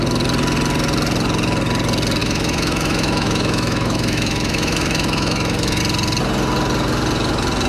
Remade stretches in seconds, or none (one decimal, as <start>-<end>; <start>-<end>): 2.2-5.8